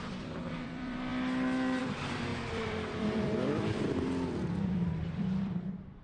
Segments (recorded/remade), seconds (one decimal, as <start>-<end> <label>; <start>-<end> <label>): 0.0-1.1 remade; 1.1-1.8 recorded; 1.8-6.0 remade